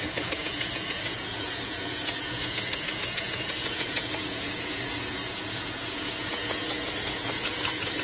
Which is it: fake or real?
fake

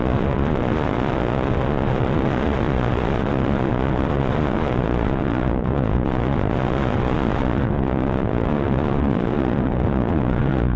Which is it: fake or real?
fake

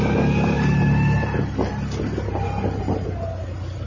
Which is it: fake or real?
real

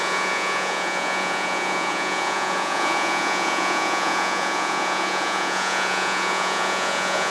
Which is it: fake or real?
fake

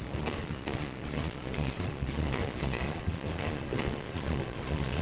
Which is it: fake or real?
fake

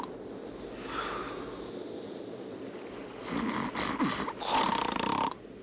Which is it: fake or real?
real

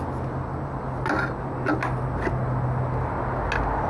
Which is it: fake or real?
real